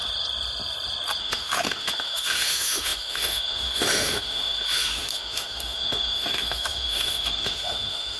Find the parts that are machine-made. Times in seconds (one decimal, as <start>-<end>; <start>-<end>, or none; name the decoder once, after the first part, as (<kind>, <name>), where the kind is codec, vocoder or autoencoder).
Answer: 1.2-8.2 (autoencoder, DAC-VAE)